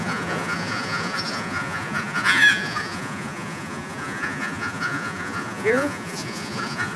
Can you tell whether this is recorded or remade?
remade